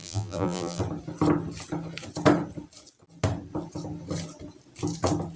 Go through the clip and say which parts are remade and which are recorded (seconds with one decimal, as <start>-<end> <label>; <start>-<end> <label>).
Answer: 0.0-0.8 remade; 0.8-5.4 recorded

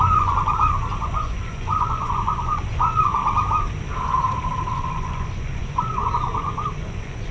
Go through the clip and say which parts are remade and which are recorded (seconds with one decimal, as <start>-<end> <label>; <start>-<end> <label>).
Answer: 0.0-3.2 remade; 3.2-4.7 recorded; 4.7-7.3 remade

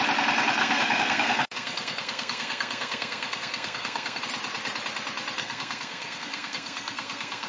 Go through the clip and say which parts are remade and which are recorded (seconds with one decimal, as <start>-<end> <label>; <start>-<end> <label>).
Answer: 0.0-0.6 recorded; 0.6-4.2 remade; 4.2-5.4 recorded; 5.4-7.5 remade

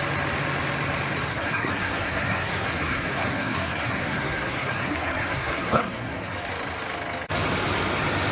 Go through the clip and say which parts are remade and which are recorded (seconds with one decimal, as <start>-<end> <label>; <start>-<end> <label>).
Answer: 0.0-1.3 recorded; 1.3-6.3 remade; 6.3-8.3 recorded

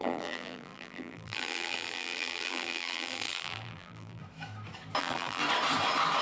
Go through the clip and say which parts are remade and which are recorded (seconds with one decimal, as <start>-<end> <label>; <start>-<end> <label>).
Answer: 0.0-4.2 remade; 4.2-5.0 recorded; 5.0-5.4 remade; 5.4-6.2 recorded